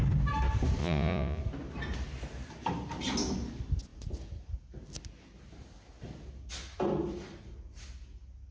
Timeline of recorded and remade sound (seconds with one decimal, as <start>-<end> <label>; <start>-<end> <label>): 0.0-0.8 recorded; 0.8-1.4 remade; 1.4-8.5 recorded